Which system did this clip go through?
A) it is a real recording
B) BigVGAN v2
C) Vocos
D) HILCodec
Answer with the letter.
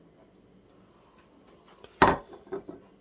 A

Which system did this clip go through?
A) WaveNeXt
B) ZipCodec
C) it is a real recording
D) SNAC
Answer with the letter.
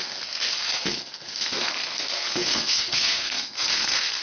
D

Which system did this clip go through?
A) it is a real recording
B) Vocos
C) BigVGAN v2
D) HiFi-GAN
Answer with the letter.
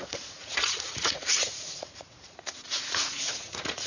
B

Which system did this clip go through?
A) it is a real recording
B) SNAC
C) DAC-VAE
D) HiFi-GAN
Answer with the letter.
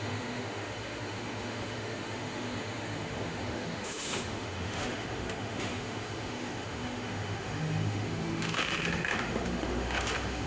C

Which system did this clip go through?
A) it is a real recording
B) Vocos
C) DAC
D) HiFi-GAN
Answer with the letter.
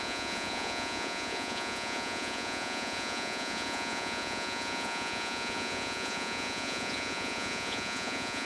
B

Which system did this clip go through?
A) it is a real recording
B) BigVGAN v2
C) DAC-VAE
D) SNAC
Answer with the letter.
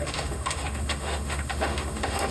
C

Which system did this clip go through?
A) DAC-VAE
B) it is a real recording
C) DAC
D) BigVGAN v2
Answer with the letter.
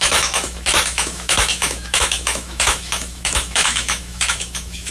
A